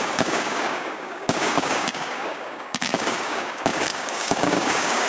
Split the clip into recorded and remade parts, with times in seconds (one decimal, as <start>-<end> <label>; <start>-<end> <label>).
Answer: 0.0-5.1 remade